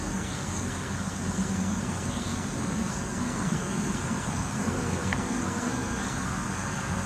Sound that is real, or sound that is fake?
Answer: fake